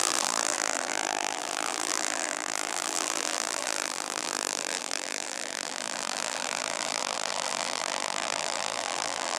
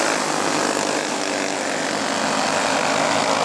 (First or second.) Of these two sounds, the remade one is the first